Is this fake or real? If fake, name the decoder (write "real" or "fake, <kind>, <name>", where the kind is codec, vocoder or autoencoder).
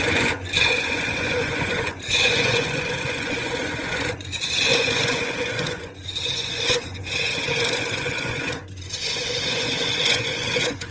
fake, vocoder, Vocos